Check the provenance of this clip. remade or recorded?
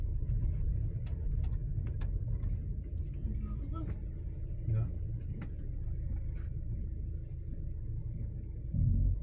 recorded